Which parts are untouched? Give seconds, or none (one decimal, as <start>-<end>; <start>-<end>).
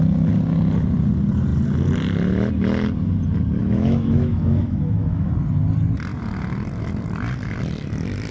0.0-3.6; 5.3-8.3